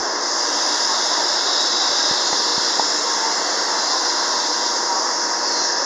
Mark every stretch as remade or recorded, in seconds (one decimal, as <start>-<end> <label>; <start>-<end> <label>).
0.0-1.9 remade; 1.9-5.9 recorded